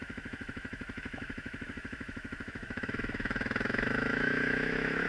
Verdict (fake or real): fake